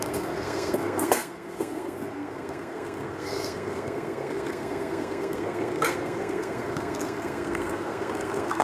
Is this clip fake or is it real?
fake